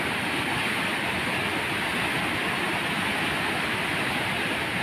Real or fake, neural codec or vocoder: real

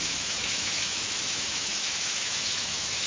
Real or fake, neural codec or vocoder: fake, autoencoder, DAC-VAE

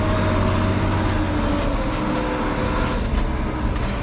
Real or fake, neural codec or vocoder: real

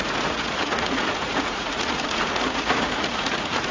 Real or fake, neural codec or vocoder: fake, vocoder, Vocos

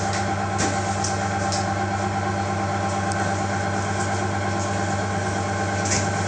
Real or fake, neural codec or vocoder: real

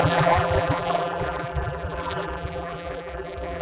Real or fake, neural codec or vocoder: fake, vocoder, BigVGAN v2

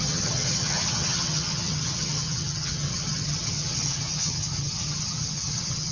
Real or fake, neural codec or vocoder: fake, vocoder, HiFi-GAN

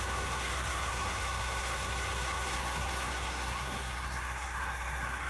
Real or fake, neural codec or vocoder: fake, codec, SNAC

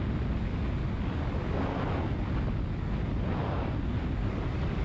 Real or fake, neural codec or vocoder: real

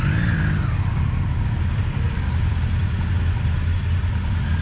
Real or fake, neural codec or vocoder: real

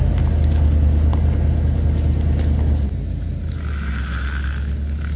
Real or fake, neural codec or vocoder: real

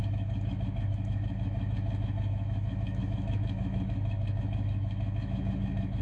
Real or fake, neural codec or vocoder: fake, autoencoder, DAC-VAE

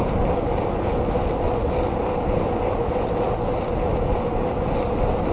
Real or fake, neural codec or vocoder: real